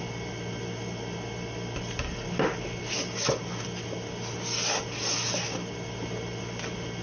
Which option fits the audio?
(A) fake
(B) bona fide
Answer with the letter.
B